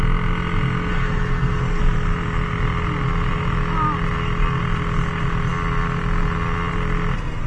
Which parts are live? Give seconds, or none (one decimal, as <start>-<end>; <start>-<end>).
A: 0.0-0.9; 1.8-7.5